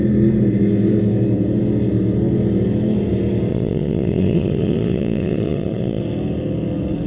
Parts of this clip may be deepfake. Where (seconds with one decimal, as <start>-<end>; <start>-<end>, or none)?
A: 3.5-6.0